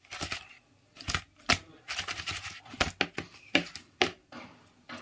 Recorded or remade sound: recorded